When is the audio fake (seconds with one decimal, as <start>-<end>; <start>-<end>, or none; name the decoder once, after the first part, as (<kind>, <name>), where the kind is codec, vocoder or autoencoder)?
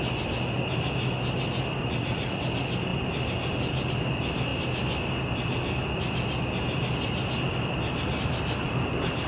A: 1.8-2.4 (vocoder, Vocos)